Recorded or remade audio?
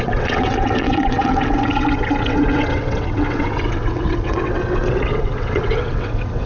remade